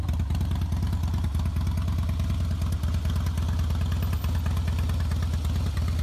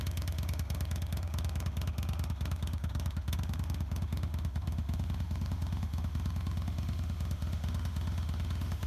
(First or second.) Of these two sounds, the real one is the first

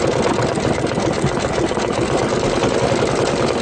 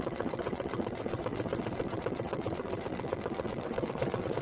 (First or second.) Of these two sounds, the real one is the first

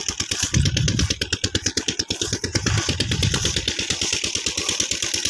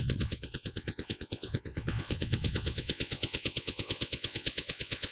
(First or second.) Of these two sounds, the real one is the first